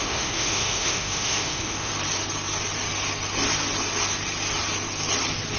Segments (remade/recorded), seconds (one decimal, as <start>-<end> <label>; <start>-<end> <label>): 0.0-1.9 remade; 1.9-5.6 recorded